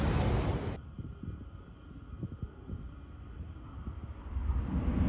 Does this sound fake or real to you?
real